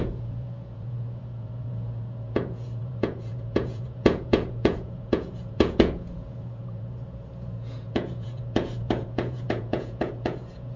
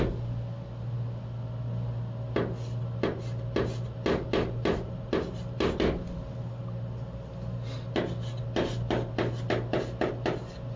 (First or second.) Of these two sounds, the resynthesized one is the first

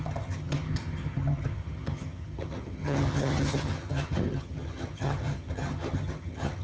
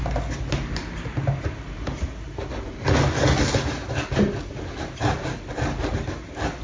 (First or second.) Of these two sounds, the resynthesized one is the first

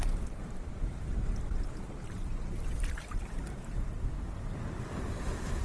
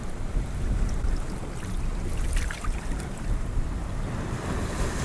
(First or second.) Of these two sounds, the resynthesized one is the second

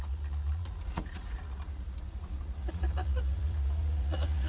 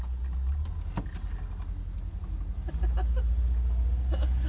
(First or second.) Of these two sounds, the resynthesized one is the first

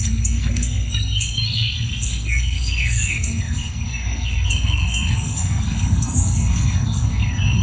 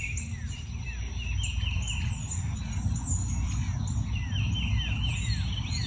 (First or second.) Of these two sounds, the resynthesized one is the first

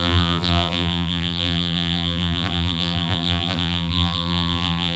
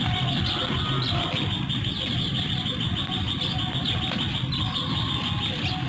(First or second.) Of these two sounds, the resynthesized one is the first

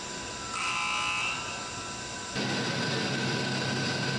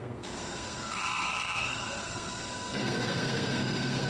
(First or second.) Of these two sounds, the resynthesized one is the second